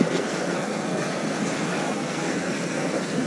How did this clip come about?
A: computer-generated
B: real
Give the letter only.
A